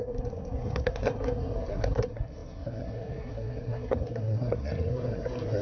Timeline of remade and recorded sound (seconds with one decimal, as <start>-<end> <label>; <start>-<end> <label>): 0.0-5.6 remade